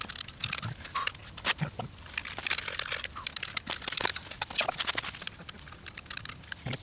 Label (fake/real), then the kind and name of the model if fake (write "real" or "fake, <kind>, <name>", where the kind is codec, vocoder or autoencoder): real